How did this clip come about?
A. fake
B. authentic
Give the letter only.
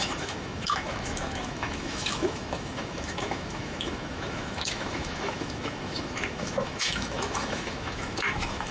A